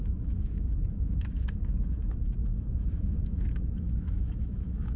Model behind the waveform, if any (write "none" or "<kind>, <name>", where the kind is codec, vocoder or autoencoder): autoencoder, DAC-VAE